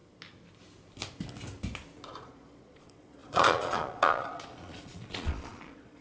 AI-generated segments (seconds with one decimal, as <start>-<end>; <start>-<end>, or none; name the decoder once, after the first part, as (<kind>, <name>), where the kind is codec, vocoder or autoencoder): 2.2-6.0 (vocoder, Vocos)